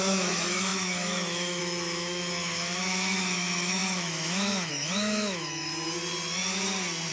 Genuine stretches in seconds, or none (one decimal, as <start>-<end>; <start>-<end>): 5.7-7.1